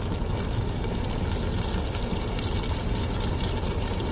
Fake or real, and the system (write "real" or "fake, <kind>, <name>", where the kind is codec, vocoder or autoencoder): real